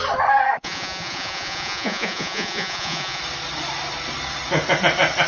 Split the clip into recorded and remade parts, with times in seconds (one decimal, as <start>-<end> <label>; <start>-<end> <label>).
0.0-0.6 recorded; 0.6-3.2 remade; 3.2-5.3 recorded